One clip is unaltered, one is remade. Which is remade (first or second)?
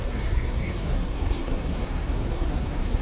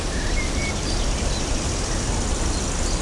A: first